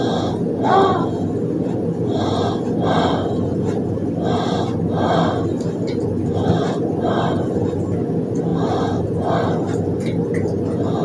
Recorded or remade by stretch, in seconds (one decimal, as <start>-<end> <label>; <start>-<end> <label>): 0.0-8.5 recorded; 8.5-9.2 remade; 9.2-11.0 recorded